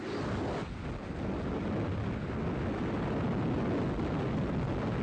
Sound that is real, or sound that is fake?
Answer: real